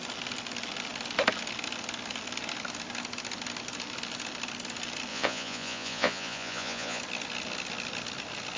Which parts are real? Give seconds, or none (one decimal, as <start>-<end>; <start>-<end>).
0.0-5.1; 7.0-8.6